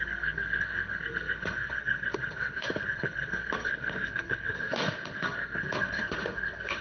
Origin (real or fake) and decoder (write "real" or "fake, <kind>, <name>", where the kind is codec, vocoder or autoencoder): fake, codec, SNAC